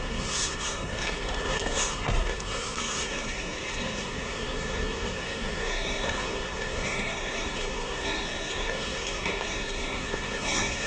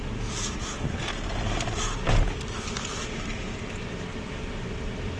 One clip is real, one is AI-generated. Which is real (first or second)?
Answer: second